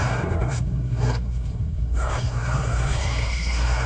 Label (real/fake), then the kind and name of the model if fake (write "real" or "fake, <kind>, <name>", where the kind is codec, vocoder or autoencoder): fake, codec, SNAC